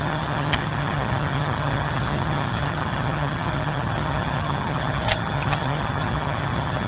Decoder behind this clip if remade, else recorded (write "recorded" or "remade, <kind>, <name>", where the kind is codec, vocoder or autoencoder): remade, vocoder, HiFi-GAN